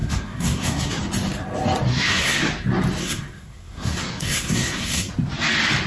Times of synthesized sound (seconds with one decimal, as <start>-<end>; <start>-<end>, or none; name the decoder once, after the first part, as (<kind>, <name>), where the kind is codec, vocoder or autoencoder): 0.0-1.0 (codec, SNAC); 1.9-2.5; 3.0-5.1